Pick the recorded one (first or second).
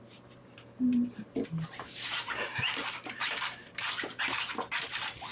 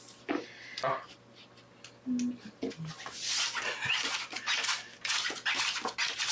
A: second